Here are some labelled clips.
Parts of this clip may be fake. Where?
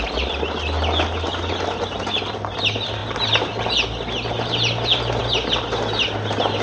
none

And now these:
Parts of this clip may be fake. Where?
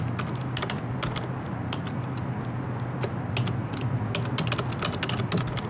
none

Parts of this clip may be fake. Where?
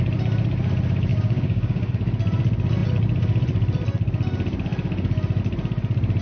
1.1-1.9 (codec, DAC)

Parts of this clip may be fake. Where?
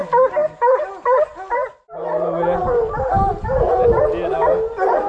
none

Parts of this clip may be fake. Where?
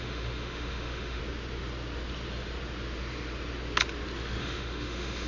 0.0-1.2 (autoencoder, DAC-VAE); 4.4-5.3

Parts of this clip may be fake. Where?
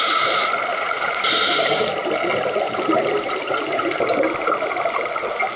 0.7-1.3 (vocoder, Vocos)